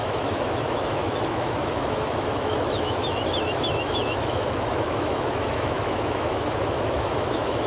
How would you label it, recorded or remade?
remade